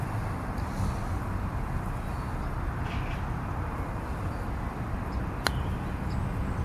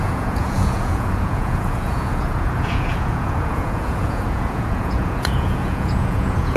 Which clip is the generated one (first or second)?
second